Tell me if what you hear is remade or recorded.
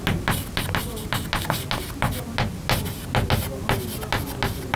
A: recorded